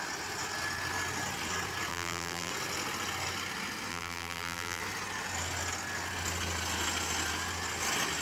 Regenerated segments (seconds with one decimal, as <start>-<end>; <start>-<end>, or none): 1.9-2.5; 3.9-4.8